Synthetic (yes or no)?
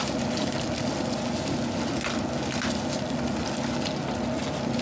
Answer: no